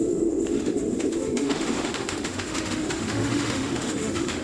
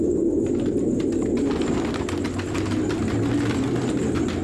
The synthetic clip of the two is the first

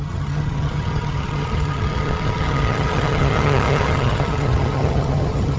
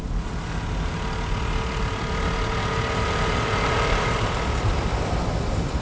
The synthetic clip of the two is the first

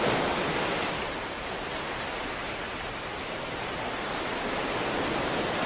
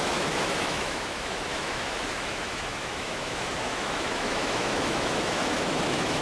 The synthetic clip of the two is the second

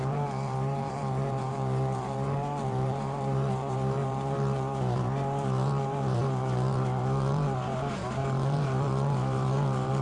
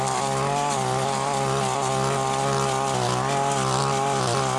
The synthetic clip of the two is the first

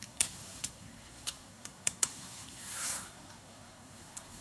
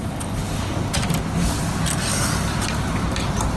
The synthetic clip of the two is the first